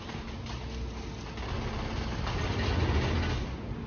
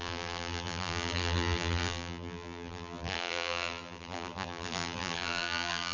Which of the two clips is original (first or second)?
first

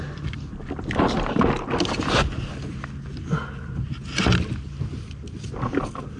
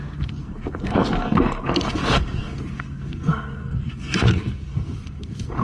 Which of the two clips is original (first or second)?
first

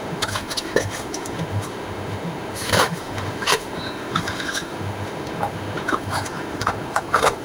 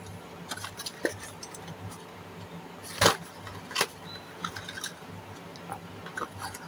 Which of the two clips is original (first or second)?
second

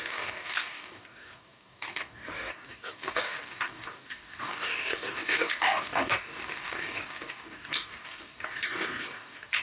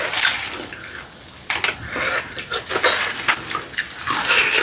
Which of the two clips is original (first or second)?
second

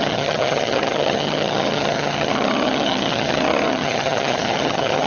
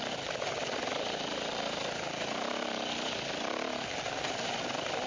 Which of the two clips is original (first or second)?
second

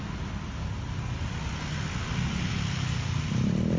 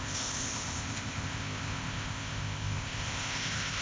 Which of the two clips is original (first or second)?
first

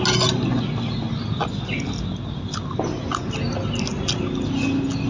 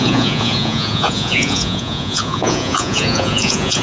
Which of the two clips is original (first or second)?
first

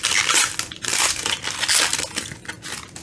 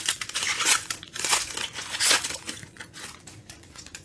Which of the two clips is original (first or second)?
first